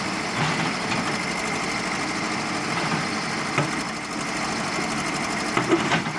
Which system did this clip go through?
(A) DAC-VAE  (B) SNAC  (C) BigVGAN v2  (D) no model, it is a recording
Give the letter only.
D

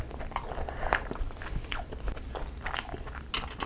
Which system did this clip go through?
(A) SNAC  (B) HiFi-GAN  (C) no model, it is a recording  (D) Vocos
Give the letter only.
C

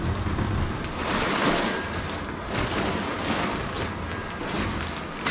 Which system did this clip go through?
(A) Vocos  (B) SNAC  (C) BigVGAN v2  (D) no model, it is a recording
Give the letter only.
D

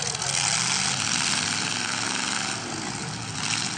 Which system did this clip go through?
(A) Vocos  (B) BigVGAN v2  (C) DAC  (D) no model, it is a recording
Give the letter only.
D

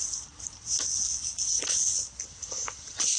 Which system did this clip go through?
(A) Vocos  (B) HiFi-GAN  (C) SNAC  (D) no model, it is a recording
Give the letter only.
D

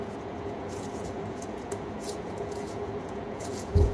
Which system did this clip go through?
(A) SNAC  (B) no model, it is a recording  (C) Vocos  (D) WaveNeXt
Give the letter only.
C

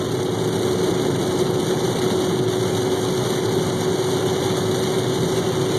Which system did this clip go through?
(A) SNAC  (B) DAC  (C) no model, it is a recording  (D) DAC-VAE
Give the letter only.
C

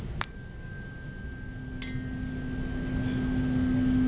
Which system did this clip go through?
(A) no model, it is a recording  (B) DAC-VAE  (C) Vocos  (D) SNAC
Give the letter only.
A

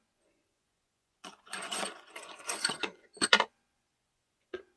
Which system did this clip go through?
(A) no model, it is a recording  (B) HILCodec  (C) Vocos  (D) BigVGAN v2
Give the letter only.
C